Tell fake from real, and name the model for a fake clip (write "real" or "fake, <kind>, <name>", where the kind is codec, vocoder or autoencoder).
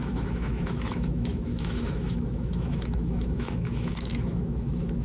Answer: fake, autoencoder, DAC-VAE